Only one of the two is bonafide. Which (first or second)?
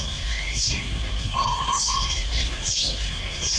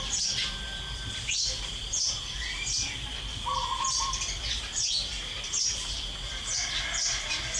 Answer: second